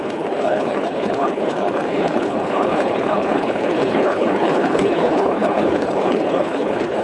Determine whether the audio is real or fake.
fake